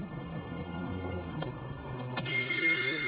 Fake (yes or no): yes